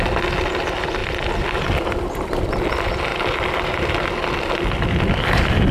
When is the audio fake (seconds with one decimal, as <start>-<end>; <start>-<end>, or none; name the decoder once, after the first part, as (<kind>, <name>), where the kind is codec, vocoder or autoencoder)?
1.0-1.9 (vocoder, BigVGAN v2)